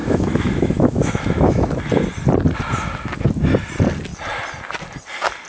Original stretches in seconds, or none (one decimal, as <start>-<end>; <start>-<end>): 1.7-5.5